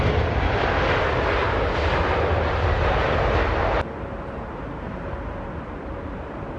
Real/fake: real